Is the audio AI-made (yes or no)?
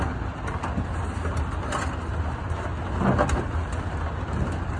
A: no